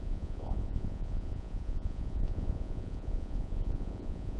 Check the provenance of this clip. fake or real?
fake